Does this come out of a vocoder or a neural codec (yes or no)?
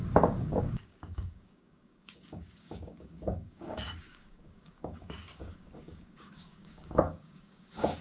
yes